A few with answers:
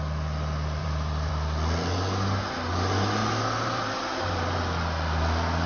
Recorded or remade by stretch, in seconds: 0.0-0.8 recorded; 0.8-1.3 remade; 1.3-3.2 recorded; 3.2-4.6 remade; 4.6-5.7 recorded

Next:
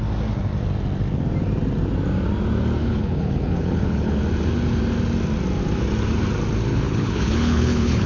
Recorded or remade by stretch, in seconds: 0.0-2.8 recorded; 2.8-4.2 remade; 4.2-6.7 recorded; 6.7-8.1 remade

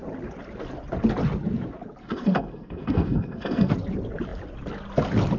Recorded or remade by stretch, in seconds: 0.0-2.0 recorded; 2.0-3.7 remade; 3.7-5.4 recorded

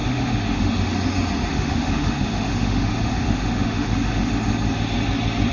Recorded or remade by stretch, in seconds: 0.0-0.9 remade; 0.9-1.5 recorded; 1.5-4.3 remade; 4.3-5.5 recorded

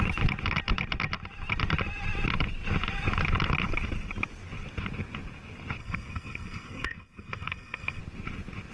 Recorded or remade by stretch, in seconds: 0.0-5.8 recorded; 5.8-8.0 remade; 8.0-8.7 recorded